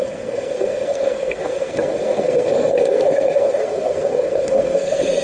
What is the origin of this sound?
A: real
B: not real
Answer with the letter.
B